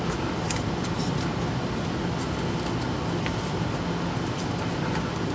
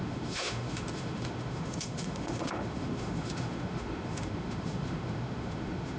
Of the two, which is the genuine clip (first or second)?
first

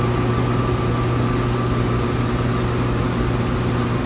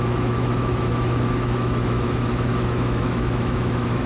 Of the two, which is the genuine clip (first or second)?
first